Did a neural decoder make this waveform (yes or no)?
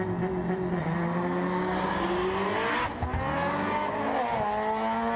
no